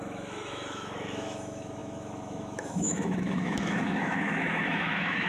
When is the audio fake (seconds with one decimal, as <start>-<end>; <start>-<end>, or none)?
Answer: 0.0-5.3